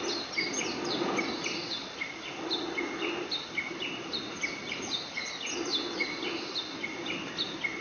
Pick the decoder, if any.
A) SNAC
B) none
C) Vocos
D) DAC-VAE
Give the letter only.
B